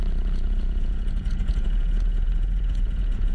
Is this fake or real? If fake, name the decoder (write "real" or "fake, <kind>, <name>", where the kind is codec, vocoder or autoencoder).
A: fake, vocoder, Vocos